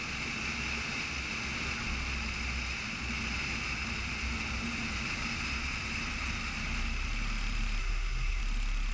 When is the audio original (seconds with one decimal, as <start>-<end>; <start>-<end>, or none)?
0.0-7.8; 8.4-8.9